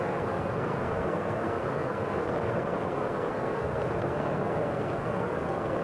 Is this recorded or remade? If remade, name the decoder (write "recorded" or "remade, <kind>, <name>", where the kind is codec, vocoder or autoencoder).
remade, codec, SNAC